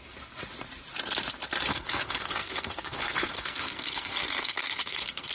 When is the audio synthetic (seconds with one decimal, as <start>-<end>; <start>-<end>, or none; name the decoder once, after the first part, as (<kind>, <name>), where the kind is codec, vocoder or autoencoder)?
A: 1.7-5.3 (codec, SNAC)